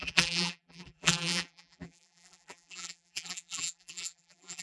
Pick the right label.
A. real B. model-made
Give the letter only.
B